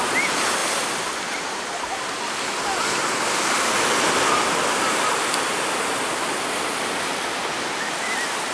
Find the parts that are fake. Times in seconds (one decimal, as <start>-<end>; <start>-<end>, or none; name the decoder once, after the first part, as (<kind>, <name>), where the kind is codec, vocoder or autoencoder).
none